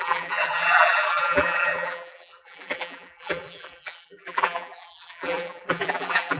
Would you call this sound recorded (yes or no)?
no